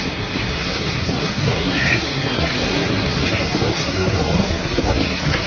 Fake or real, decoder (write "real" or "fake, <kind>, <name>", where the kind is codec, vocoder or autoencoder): fake, codec, SNAC